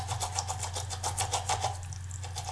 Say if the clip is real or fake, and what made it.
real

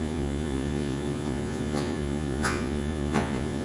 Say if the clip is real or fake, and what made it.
fake, vocoder, Vocos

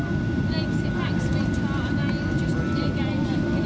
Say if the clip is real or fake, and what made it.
real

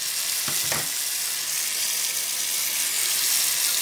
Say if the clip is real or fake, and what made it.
real